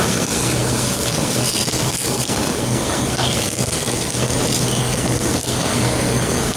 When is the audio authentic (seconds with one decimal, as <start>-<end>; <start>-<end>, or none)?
4.3-4.8